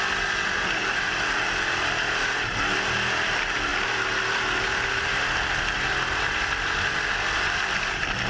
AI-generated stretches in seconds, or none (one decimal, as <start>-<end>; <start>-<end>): none